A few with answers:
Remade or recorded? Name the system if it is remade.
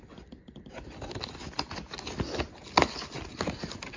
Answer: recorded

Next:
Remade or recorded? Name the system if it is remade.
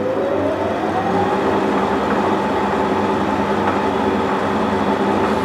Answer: recorded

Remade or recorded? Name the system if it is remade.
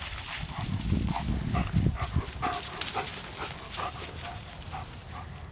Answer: recorded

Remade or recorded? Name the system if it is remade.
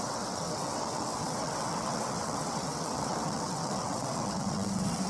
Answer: remade, vocoder, WaveNeXt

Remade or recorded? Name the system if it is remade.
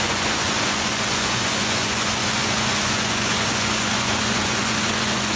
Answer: remade, vocoder, Vocos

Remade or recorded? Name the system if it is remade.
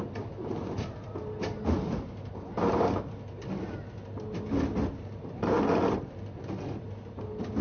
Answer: recorded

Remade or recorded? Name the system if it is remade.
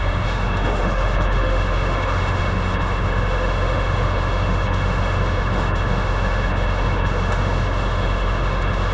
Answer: remade, autoencoder, DAC-VAE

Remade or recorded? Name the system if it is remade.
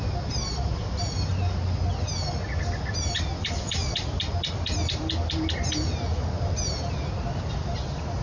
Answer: recorded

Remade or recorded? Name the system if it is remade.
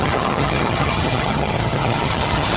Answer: remade, vocoder, HiFi-GAN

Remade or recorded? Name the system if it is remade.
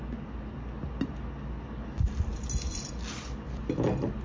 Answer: recorded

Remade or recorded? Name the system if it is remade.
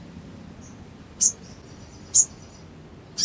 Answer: recorded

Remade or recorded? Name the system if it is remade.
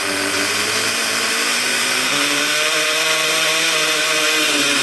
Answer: remade, vocoder, BigVGAN v2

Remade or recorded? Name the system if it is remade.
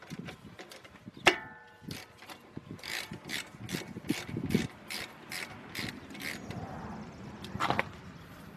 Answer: recorded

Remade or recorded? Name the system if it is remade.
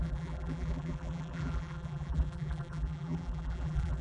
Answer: remade, vocoder, BigVGAN v2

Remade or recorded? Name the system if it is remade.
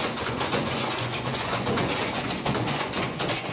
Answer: remade, vocoder, Vocos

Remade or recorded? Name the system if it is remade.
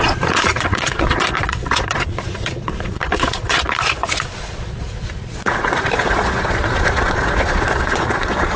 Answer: remade, vocoder, Vocos